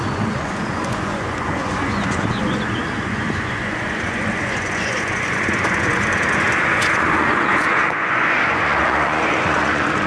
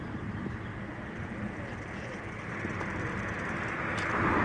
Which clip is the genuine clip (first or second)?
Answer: second